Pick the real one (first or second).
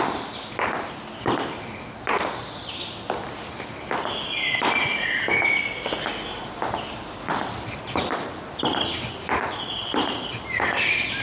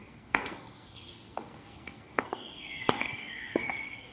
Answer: first